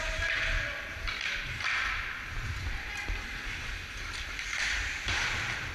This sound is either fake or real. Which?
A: real